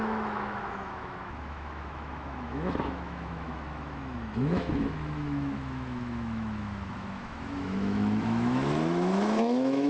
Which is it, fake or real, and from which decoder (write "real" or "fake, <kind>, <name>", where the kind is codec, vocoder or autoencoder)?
fake, autoencoder, DAC-VAE